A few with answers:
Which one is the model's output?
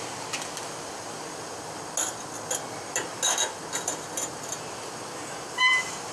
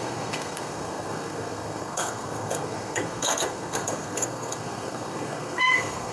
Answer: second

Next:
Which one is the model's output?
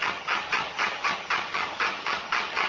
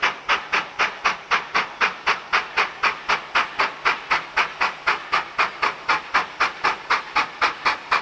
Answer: first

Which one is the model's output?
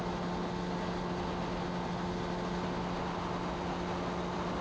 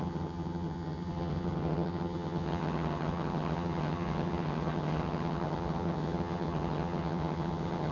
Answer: second